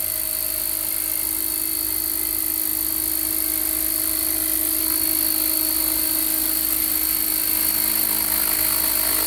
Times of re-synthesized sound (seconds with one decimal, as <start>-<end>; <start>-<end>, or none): none